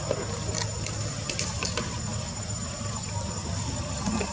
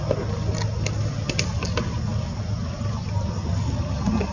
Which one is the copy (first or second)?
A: first